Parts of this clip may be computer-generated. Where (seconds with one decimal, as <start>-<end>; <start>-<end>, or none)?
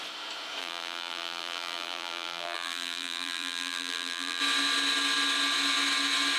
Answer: 0.6-4.4